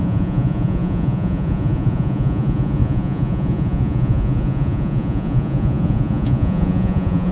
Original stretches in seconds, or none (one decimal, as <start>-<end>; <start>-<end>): none